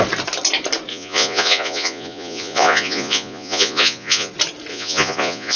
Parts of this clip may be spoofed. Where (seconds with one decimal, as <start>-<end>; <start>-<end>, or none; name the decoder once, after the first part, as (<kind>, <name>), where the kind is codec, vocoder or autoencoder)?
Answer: 0.9-4.3 (vocoder, Vocos); 4.7-5.6

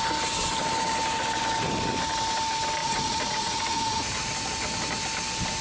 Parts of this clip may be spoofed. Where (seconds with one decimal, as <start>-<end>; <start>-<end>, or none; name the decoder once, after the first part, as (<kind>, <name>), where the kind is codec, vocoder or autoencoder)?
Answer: 2.8-4.2 (vocoder, Vocos)

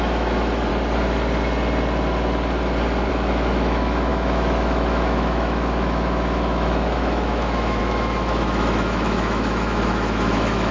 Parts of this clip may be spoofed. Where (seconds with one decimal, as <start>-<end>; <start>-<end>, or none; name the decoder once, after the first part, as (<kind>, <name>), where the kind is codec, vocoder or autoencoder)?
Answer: 0.0-0.7 (autoencoder, DAC-VAE); 3.1-10.7

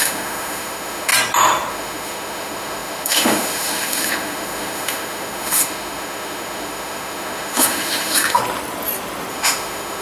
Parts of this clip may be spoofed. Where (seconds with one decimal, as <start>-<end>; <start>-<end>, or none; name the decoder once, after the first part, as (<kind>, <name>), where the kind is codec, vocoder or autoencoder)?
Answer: 0.0-1.1 (autoencoder, DAC-VAE); 1.7-8.4; 9.3-10.0

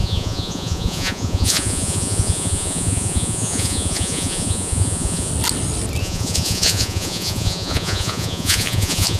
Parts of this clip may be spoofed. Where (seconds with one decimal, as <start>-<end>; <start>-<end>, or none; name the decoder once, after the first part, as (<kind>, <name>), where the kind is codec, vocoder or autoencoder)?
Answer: 0.0-5.3 (vocoder, Vocos); 6.0-9.2

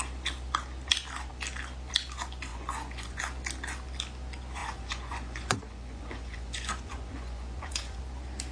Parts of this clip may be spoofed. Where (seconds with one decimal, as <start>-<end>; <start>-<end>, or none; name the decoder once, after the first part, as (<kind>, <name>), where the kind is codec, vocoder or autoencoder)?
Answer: 2.5-3.2 (vocoder, Vocos); 4.6-8.0

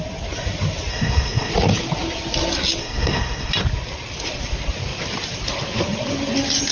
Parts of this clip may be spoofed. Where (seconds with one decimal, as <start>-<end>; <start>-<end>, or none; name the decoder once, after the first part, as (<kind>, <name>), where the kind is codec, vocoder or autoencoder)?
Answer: 0.9-1.5 (codec, SNAC); 2.8-3.5